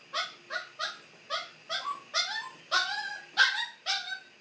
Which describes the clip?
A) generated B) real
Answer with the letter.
B